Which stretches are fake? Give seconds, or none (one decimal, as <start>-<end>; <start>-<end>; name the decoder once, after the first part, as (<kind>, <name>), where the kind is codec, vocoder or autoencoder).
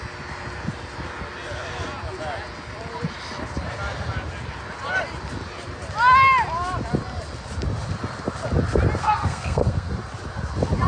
9.0-9.9 (codec, SNAC)